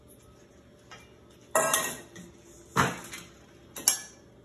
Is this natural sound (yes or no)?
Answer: yes